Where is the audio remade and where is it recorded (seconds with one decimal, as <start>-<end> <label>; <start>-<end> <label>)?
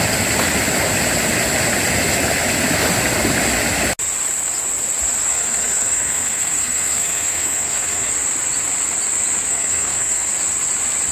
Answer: 0.0-5.3 recorded; 5.3-8.1 remade; 8.1-9.5 recorded; 9.5-10.3 remade; 10.3-11.1 recorded